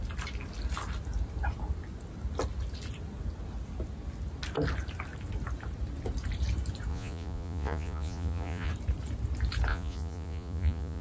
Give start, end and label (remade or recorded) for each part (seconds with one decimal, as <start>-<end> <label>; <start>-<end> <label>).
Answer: 0.0-6.9 recorded; 6.9-8.7 remade; 8.7-9.7 recorded; 9.7-11.0 remade